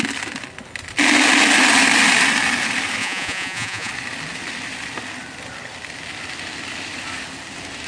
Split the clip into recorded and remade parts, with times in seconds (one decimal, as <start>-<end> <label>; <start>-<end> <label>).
0.0-3.0 recorded; 3.0-3.9 remade; 3.9-7.9 recorded